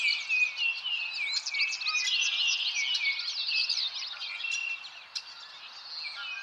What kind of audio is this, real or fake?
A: real